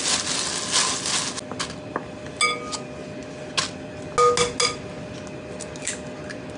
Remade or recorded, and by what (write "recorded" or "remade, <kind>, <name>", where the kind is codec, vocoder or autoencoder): recorded